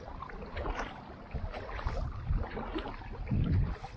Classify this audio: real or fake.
real